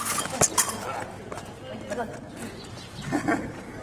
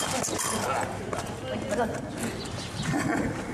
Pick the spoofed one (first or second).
second